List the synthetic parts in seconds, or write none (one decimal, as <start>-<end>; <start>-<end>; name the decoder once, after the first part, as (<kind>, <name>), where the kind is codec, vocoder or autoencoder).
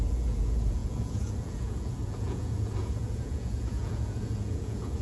0.0-5.0 (vocoder, Vocos)